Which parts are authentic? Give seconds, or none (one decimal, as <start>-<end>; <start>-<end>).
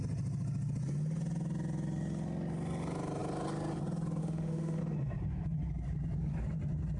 0.0-4.2; 4.8-7.0